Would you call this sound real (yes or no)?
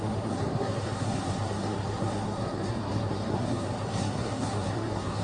no